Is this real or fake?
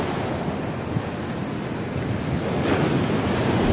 real